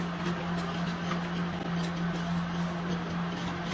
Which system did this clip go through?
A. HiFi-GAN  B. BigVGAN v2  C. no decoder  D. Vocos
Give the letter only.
C